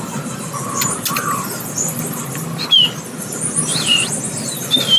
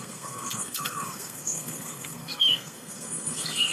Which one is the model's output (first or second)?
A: second